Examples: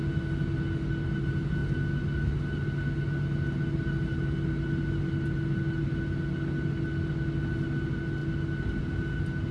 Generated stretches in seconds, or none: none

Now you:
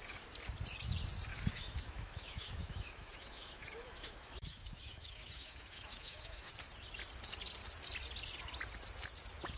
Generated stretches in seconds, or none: 1.3-6.5 (autoencoder, DAC-VAE)